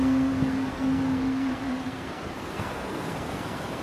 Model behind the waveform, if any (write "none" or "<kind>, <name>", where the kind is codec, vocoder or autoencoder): codec, SNAC